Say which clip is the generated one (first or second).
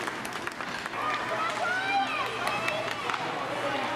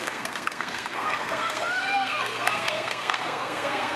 second